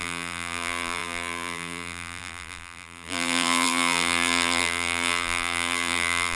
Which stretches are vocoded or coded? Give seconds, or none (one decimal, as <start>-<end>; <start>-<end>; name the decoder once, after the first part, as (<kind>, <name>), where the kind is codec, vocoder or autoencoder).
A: 0.0-6.4 (vocoder, BigVGAN v2)